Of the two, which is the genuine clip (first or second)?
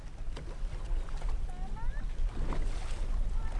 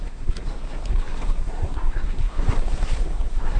first